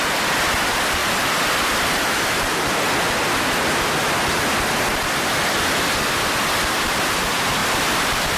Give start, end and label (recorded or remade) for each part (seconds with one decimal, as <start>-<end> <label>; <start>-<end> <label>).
0.0-1.0 recorded; 1.0-2.8 remade; 2.8-8.4 recorded